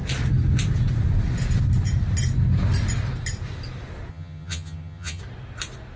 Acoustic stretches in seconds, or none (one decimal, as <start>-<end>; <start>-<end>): 0.0-4.1; 5.2-6.0